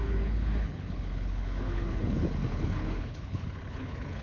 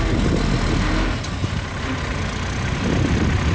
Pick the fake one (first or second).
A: first